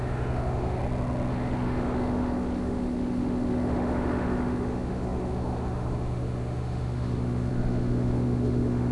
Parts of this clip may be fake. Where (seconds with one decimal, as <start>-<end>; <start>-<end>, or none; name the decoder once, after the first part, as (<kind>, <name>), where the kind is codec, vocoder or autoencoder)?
0.0-0.8 (autoencoder, DAC-VAE); 1.3-8.9